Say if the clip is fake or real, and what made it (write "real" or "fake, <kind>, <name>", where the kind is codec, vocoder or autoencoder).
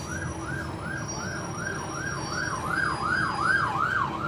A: real